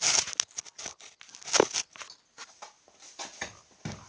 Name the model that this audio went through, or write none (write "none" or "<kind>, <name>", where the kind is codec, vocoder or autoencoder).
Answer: none